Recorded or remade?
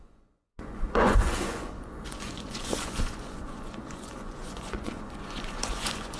remade